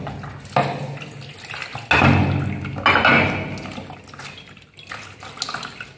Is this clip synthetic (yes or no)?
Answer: no